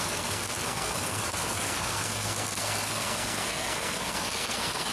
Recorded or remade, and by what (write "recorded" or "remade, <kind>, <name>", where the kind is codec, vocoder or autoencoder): remade, codec, SNAC